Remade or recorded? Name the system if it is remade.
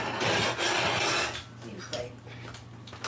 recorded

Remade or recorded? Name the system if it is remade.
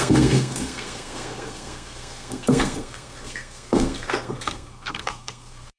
remade, codec, SNAC